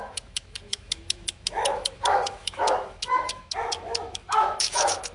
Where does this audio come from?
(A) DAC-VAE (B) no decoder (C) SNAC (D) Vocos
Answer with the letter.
A